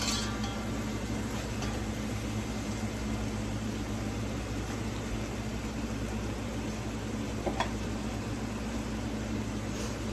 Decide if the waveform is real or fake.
real